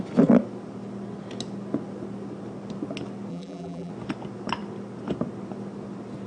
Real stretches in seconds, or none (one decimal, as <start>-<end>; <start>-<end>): 0.0-3.3; 3.9-6.3